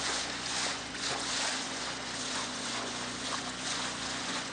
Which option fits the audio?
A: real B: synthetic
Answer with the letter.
B